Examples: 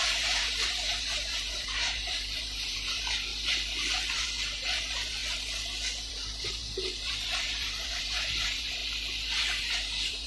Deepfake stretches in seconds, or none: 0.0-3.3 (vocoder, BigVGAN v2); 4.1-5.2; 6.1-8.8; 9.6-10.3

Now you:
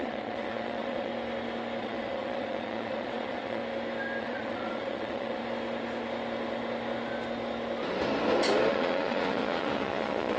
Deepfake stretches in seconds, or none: 0.0-1.1 (vocoder, Vocos); 1.8-3.6; 4.2-5.4; 8.7-10.4

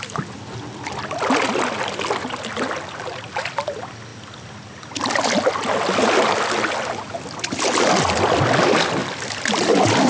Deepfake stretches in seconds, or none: none

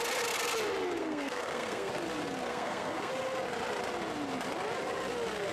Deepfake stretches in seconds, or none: 1.0-1.9 (codec, SNAC); 2.5-3.1

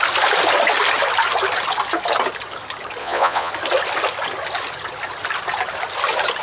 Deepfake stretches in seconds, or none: 3.0-3.5 (vocoder, Vocos)

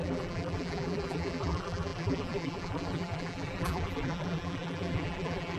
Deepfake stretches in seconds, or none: 0.0-5.6 (vocoder, BigVGAN v2)

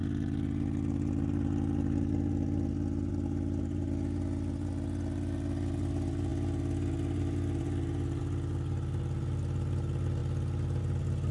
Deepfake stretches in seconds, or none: none